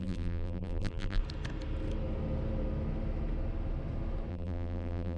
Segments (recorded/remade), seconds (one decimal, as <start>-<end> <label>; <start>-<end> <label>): 0.0-1.2 remade; 1.2-4.3 recorded; 4.3-5.2 remade